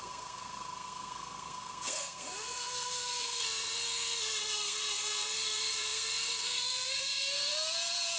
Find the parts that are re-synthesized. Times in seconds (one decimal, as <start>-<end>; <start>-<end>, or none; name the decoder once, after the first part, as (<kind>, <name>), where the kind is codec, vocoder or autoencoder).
0.0-7.5 (codec, SNAC)